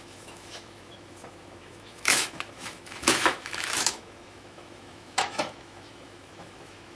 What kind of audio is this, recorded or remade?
remade